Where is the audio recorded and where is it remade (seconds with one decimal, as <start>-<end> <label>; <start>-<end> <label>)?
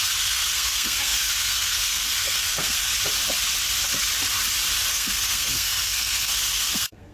0.0-2.9 remade; 2.9-4.9 recorded; 4.9-7.1 remade